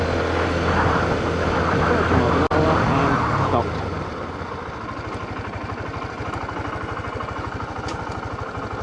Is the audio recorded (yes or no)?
yes